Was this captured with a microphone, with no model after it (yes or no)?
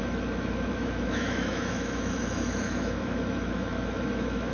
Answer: no